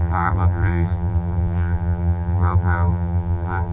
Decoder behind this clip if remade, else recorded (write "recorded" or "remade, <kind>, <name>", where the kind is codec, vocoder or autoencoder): remade, vocoder, BigVGAN v2